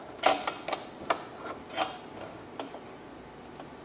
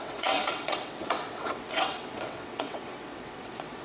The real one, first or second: first